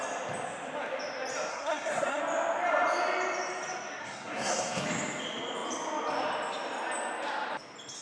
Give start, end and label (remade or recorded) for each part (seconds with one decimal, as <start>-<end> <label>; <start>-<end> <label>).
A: 0.0-1.5 recorded; 1.5-2.2 remade; 2.2-4.0 recorded; 4.0-4.8 remade; 4.8-8.0 recorded